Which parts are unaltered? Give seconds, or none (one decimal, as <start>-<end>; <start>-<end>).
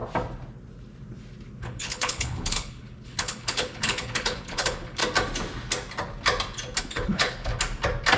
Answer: 0.0-1.6; 5.0-6.8; 7.5-8.2